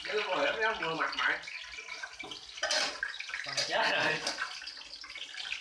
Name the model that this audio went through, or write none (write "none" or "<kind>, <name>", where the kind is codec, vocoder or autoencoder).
none